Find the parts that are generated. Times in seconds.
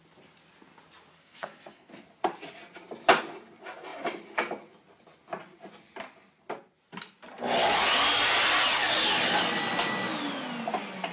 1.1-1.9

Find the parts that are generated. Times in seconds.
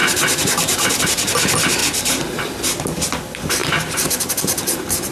0.0-1.0; 1.8-2.6; 3.6-4.3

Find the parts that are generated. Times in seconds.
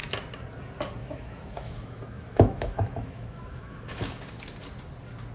1.0-4.2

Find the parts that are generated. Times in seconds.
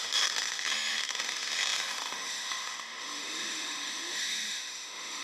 0.0-5.2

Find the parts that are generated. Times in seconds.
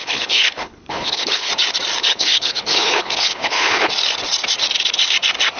0.0-1.5; 2.0-3.9